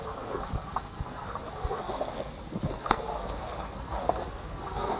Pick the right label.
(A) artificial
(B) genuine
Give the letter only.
A